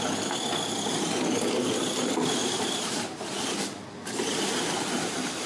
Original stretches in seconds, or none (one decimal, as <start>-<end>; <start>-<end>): 0.0-2.4